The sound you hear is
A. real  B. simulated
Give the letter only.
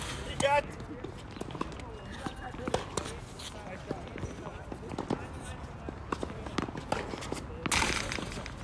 A